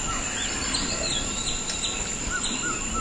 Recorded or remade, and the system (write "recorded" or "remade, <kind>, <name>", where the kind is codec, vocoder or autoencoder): recorded